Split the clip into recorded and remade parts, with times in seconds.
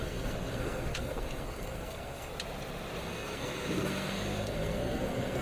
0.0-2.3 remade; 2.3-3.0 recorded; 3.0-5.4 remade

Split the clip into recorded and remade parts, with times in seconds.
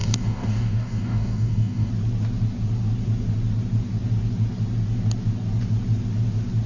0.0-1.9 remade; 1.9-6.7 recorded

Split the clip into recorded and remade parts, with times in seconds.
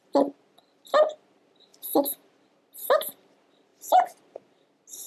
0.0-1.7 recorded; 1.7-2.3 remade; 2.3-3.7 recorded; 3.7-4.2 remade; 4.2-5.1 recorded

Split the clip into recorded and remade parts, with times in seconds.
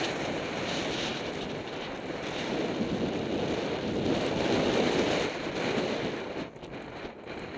0.0-7.6 recorded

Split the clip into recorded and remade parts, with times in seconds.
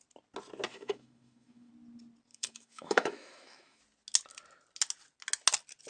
0.0-0.7 recorded; 0.7-1.7 remade; 1.7-2.3 recorded; 2.3-3.8 remade; 3.8-5.9 recorded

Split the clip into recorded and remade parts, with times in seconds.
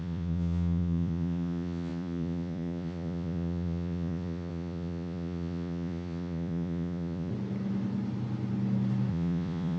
0.0-7.3 remade; 7.3-9.1 recorded; 9.1-9.8 remade